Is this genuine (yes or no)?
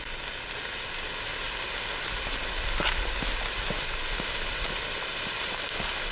yes